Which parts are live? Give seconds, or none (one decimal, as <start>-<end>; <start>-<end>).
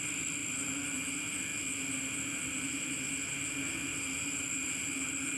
0.0-0.4; 1.0-3.9; 4.9-5.4